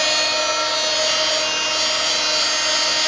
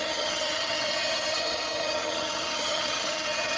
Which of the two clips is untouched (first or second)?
first